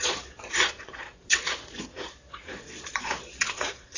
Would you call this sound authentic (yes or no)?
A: no